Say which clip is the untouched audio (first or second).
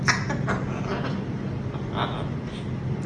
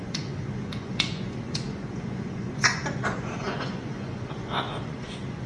first